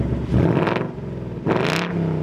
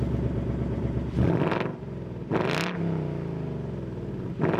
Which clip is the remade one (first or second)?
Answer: second